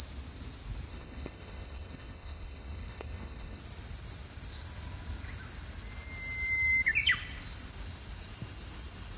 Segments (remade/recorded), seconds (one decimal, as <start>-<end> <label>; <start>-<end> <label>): 0.0-0.9 recorded; 0.9-3.6 remade; 3.6-9.2 recorded